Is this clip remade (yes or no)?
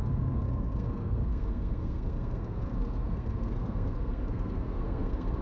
yes